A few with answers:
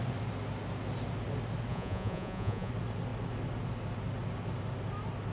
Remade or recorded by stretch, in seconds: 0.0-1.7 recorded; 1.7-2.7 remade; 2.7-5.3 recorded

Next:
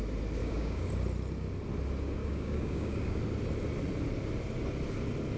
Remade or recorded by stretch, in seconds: 0.0-0.4 recorded; 0.4-0.9 remade; 0.9-2.2 recorded; 2.2-3.2 remade; 3.2-5.4 recorded

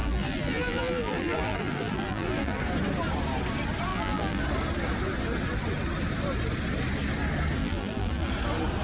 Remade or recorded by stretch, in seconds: 0.0-2.6 remade; 2.6-3.9 recorded; 3.9-4.4 remade; 4.4-7.6 recorded; 7.6-8.3 remade; 8.3-8.8 recorded

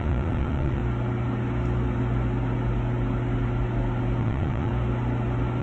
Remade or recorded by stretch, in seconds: 0.0-0.8 remade; 0.8-4.2 recorded; 4.2-4.7 remade; 4.7-5.6 recorded

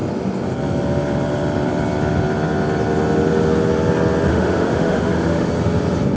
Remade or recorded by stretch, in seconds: 0.0-4.3 recorded; 4.3-5.5 remade; 5.5-6.2 recorded

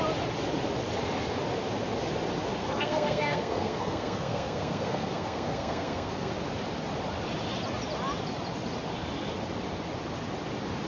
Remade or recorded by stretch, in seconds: 0.0-2.6 recorded; 2.6-6.3 remade; 6.3-10.9 recorded